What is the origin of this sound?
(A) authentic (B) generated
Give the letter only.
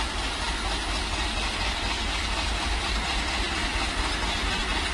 A